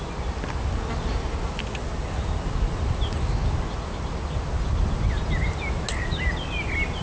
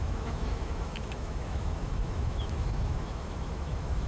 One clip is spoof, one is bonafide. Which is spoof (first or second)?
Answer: second